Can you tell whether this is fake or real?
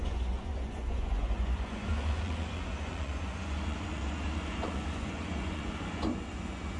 fake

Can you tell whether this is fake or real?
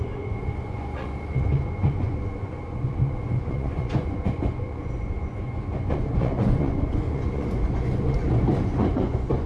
fake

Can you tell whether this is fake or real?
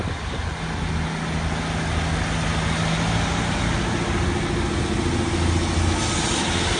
real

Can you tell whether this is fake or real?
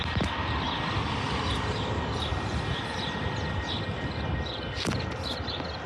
real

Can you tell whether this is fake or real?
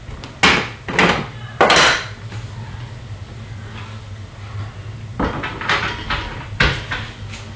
real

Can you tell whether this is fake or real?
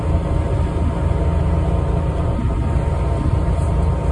real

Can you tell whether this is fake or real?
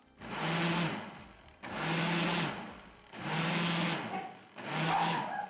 real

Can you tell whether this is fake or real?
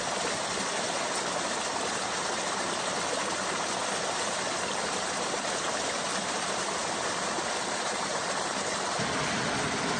real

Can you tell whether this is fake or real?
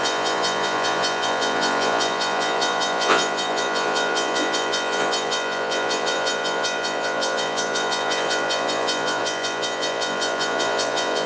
fake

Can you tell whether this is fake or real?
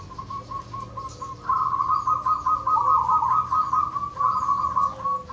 real